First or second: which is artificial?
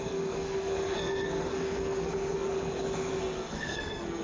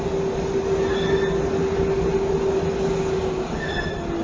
first